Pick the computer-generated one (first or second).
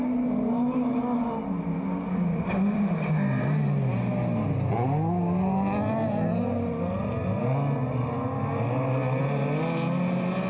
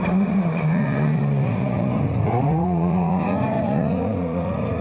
second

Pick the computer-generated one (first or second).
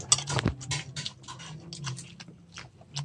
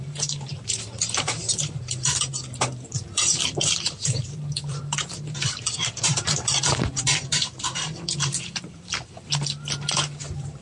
second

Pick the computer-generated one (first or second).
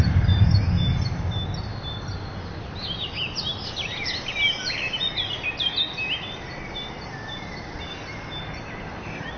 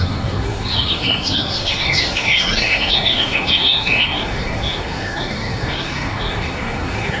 second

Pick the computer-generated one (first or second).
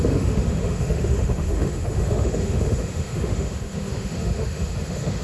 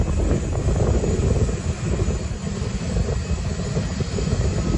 first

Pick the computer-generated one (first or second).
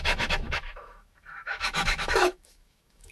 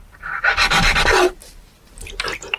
first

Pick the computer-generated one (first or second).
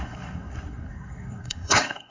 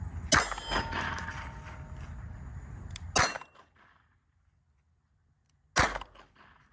first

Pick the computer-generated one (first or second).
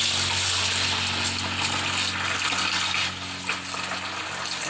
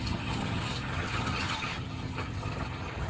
second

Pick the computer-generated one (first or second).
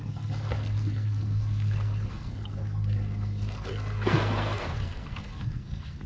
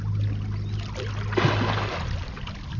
first